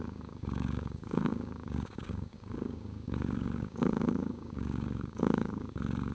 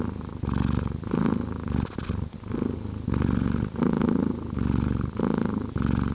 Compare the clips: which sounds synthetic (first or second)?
first